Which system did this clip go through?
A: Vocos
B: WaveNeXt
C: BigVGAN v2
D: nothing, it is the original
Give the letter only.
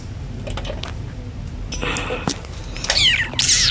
D